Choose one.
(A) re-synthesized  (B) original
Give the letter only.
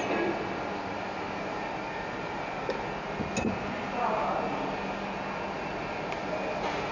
B